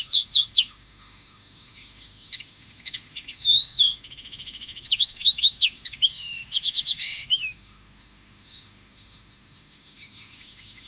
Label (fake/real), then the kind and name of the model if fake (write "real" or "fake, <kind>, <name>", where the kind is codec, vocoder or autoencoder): fake, autoencoder, DAC-VAE